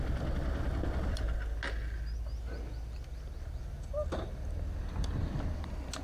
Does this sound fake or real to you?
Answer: real